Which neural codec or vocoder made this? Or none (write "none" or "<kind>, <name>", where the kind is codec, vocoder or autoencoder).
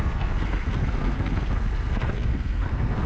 codec, SNAC